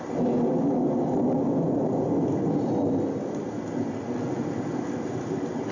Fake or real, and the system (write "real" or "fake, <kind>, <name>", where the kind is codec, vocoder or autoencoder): real